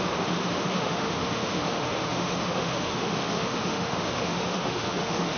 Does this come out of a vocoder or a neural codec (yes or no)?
yes